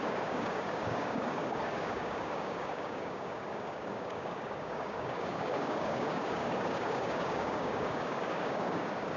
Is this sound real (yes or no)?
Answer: no